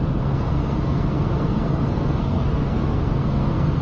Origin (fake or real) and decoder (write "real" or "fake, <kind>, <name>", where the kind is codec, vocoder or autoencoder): fake, codec, SNAC